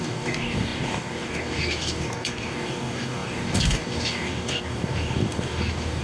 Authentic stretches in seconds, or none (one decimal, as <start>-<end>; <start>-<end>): none